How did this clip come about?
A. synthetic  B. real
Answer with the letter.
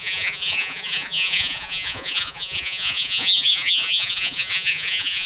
A